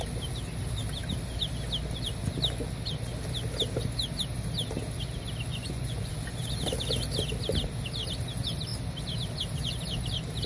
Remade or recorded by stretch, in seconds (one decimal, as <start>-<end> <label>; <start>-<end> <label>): 0.0-5.5 recorded; 5.5-6.1 remade; 6.1-10.5 recorded